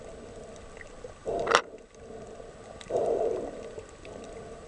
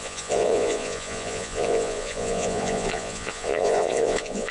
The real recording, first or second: first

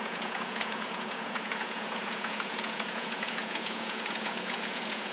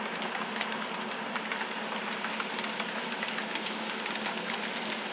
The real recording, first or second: second